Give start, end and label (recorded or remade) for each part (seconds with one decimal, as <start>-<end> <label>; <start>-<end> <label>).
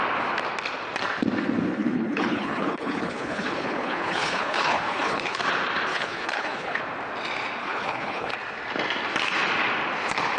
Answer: 0.0-1.8 recorded; 1.8-5.4 remade; 5.4-5.9 recorded; 5.9-6.8 remade; 6.8-7.6 recorded; 7.6-8.3 remade; 8.3-10.4 recorded